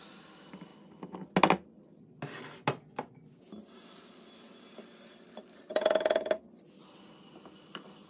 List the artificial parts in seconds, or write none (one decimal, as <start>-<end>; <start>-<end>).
5.7-6.4